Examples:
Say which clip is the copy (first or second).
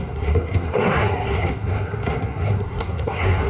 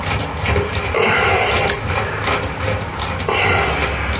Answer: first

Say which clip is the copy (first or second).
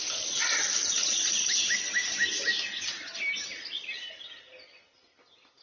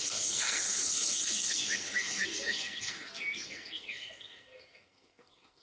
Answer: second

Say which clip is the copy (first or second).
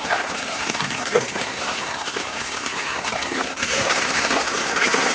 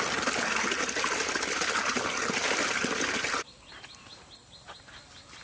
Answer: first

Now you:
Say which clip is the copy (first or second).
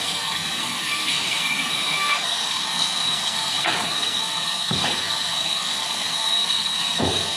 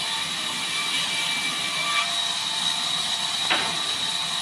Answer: first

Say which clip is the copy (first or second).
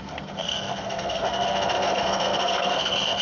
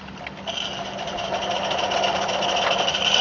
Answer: first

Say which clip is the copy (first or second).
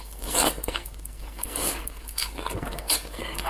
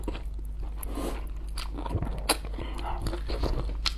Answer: first